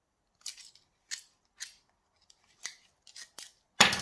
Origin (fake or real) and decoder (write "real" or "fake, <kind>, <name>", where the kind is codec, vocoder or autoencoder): real